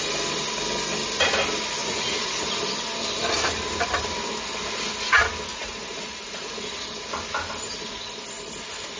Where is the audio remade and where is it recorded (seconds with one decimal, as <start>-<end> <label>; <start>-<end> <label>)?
0.0-1.8 recorded; 1.8-2.6 remade; 2.6-5.5 recorded; 5.5-6.7 remade; 6.7-9.0 recorded